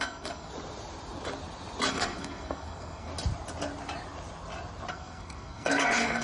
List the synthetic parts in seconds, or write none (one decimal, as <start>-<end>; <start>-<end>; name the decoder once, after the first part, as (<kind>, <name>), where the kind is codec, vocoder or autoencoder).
0.0-0.5 (codec, SNAC); 1.9-3.1; 4.9-6.2